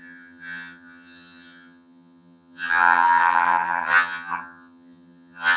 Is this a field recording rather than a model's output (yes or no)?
no